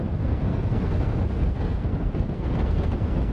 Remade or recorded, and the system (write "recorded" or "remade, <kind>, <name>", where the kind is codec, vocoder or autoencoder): remade, codec, SNAC